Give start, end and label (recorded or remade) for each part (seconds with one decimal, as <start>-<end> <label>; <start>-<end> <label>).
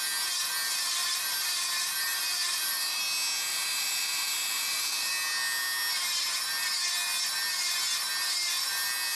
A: 0.0-1.0 recorded; 1.0-3.0 remade; 3.0-3.5 recorded; 3.5-5.1 remade; 5.1-9.1 recorded